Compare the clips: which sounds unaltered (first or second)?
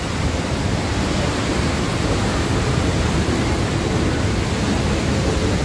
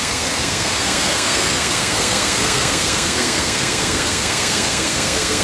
first